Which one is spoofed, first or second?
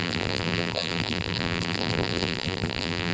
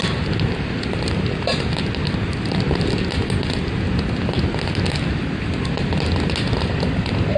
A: first